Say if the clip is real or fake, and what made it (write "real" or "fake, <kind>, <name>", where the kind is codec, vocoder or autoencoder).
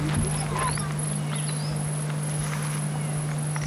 real